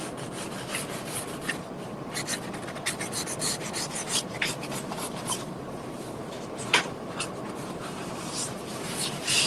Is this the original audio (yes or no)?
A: no